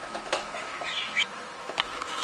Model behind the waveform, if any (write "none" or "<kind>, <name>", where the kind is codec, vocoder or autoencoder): autoencoder, DAC-VAE